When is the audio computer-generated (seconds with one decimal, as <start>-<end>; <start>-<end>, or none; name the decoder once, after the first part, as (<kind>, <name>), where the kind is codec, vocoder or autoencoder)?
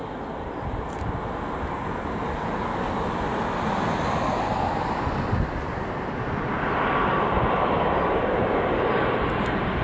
none